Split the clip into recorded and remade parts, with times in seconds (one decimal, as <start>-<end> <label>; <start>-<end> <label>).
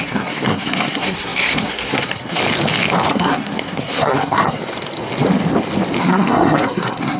0.0-2.4 remade; 2.4-3.1 recorded; 3.1-4.6 remade; 4.6-6.0 recorded; 6.0-7.2 remade